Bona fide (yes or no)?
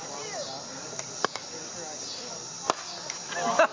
yes